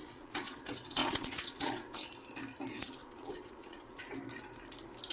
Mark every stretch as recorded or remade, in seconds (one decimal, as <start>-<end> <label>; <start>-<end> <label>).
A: 0.0-2.0 remade; 2.0-2.7 recorded; 2.7-4.0 remade; 4.0-5.1 recorded